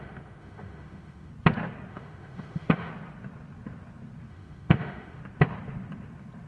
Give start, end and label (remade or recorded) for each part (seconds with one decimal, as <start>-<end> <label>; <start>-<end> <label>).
0.0-1.3 remade; 1.3-1.9 recorded; 1.9-2.9 remade; 2.9-4.3 recorded; 4.3-5.2 remade; 5.2-6.5 recorded